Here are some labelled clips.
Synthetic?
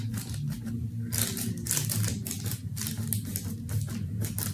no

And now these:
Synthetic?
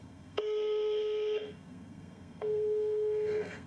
yes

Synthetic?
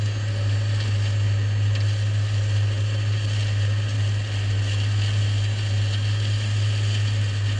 no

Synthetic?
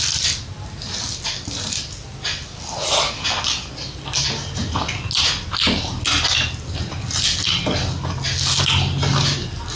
no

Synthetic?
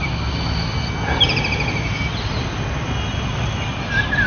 no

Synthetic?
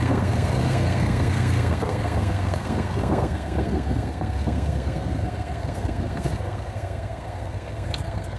yes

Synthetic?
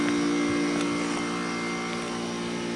no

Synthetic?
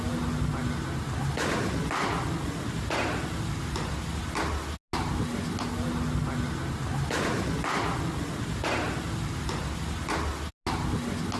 no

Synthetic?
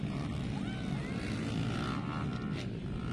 no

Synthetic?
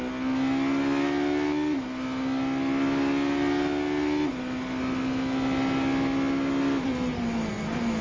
no